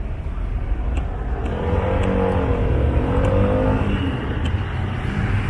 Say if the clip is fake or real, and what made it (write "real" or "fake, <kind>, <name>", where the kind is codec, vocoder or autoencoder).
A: real